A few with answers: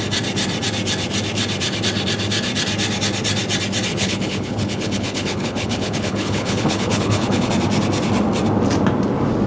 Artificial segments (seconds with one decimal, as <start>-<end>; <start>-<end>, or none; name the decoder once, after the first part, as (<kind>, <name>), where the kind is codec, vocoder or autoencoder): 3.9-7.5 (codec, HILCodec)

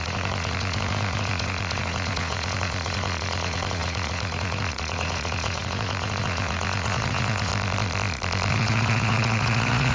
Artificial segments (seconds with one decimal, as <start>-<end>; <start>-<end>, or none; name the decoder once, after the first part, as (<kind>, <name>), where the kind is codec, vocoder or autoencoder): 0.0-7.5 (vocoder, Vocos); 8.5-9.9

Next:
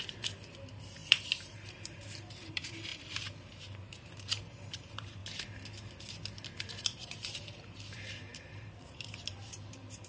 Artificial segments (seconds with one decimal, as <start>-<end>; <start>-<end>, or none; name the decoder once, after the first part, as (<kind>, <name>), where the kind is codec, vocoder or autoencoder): 0.0-5.2 (vocoder, BigVGAN v2); 6.6-10.1

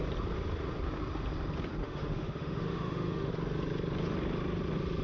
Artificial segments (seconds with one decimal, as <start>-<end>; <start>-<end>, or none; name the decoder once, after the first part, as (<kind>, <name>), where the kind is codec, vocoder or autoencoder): 1.8-3.3 (autoencoder, DAC-VAE)

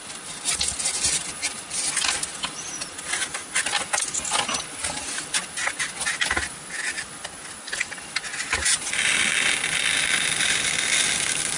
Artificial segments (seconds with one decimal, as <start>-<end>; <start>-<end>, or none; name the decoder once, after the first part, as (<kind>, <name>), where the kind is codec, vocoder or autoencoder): none